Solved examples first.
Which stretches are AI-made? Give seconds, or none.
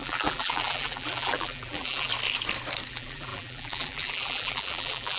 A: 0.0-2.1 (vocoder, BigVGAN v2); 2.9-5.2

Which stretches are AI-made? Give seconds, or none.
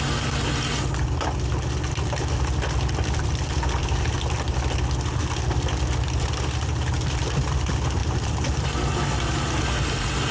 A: none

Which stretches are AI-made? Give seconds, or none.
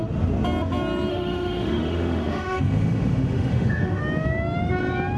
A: 1.1-4.0 (autoencoder, DAC-VAE)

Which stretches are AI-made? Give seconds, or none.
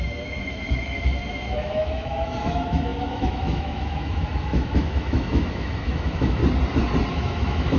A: 0.0-6.4 (autoencoder, DAC-VAE); 7.1-7.8